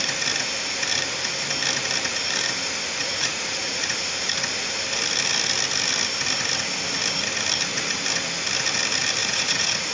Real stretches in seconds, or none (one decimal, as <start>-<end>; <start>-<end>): 0.0-3.0; 3.8-9.2